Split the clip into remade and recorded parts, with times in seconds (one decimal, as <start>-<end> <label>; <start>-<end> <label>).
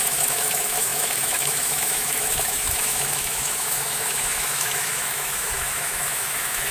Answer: 0.0-6.7 remade